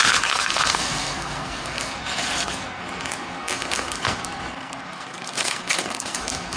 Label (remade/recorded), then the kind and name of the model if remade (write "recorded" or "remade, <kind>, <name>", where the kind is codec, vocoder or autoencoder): remade, codec, SNAC